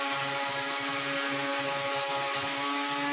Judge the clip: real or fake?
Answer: real